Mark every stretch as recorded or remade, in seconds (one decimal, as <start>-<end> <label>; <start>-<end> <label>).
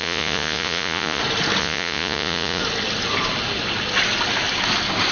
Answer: 0.0-1.2 remade; 1.2-1.6 recorded; 1.6-2.6 remade; 2.6-5.1 recorded